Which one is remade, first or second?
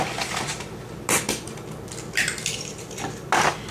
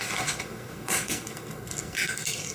second